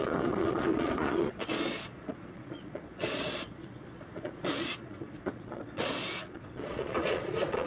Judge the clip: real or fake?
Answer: fake